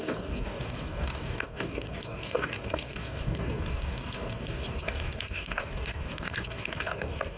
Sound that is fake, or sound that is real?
fake